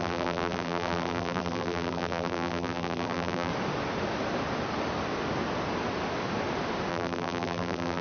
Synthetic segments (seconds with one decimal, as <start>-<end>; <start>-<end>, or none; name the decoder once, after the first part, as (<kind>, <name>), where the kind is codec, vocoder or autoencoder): 0.0-3.5 (vocoder, BigVGAN v2); 6.9-8.0